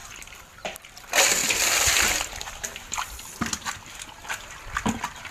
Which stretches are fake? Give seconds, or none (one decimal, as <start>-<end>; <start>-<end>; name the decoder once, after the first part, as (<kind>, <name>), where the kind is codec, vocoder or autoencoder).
0.0-0.5 (vocoder, BigVGAN v2); 1.4-4.6